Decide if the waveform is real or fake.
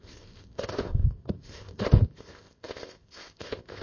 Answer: fake